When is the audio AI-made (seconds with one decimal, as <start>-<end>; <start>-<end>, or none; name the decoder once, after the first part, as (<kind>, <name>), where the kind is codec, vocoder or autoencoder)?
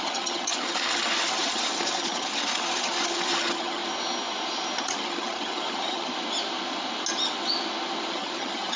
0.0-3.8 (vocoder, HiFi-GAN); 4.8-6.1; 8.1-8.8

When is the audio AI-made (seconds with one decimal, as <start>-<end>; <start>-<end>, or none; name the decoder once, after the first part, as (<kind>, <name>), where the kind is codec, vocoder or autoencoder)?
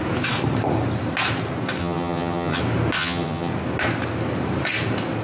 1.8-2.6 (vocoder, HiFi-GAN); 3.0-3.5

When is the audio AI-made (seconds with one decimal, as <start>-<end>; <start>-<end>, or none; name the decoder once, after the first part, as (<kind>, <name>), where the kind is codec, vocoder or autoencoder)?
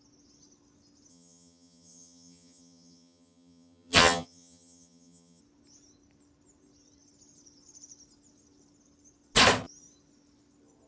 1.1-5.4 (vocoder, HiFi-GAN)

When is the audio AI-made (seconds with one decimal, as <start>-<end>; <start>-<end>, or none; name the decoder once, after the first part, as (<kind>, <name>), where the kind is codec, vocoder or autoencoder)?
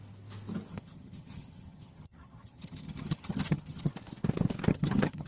0.7-3.9 (vocoder, HiFi-GAN); 4.7-5.3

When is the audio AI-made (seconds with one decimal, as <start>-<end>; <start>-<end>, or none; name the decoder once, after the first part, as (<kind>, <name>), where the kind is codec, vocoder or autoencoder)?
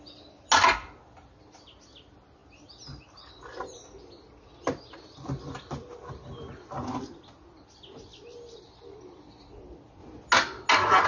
none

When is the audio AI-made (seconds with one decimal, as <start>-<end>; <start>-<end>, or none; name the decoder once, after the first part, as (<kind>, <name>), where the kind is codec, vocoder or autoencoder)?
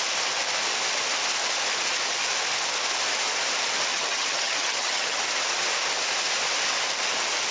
3.9-5.2 (vocoder, HiFi-GAN)